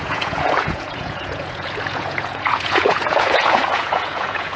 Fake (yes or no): yes